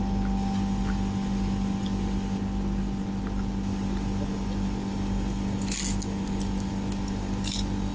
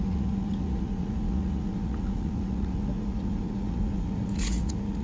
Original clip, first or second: first